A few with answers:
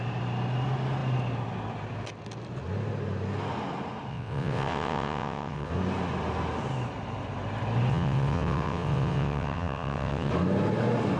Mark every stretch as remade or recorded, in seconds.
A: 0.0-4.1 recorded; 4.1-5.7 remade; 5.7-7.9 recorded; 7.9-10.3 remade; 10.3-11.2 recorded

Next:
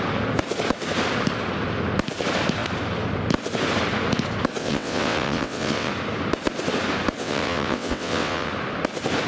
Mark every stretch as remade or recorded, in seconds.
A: 0.0-4.6 recorded; 4.6-5.9 remade; 5.9-7.2 recorded; 7.2-8.5 remade; 8.5-9.3 recorded

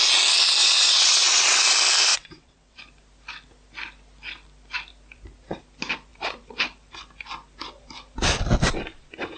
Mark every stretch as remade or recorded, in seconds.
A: 0.0-0.6 recorded; 0.6-1.6 remade; 1.6-2.1 recorded; 2.1-2.8 remade; 2.8-9.4 recorded

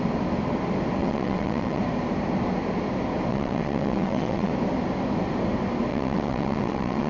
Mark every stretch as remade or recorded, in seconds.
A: 0.0-1.0 recorded; 1.0-1.8 remade; 1.8-3.3 recorded; 3.3-4.5 remade; 4.5-5.9 recorded; 5.9-7.1 remade

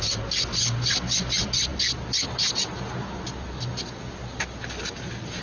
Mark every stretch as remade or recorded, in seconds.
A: 0.0-5.4 recorded

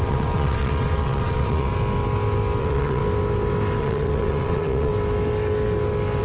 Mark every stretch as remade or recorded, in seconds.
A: 0.0-1.7 remade; 1.7-2.6 recorded; 2.6-3.0 remade; 3.0-3.8 recorded; 3.8-4.9 remade; 4.9-6.2 recorded

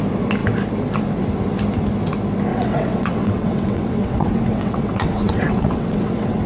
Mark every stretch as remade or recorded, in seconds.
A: 0.0-2.5 recorded; 2.5-6.5 remade